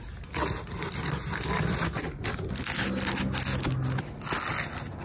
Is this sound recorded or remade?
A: recorded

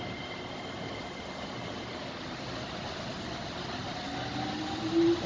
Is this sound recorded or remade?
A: recorded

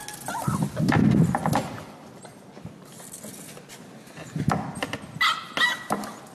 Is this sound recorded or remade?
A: recorded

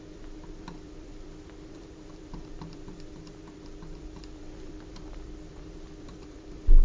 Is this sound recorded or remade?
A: remade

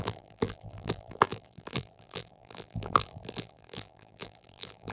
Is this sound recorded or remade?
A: remade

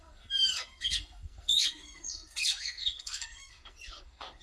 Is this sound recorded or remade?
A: remade